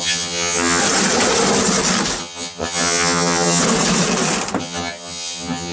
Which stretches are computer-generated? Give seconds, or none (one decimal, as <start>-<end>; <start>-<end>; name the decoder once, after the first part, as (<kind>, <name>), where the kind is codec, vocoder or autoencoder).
0.0-0.8 (vocoder, HiFi-GAN); 2.2-3.6; 4.6-5.7